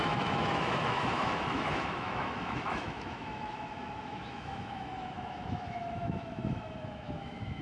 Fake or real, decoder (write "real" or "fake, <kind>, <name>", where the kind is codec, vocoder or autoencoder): fake, autoencoder, DAC-VAE